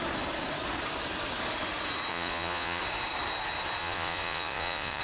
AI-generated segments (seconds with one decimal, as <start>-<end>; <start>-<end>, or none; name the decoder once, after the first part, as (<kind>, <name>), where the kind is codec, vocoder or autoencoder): 2.1-2.8 (vocoder, Vocos); 3.8-5.0